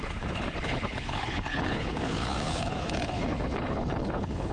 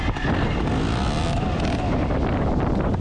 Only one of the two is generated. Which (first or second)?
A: first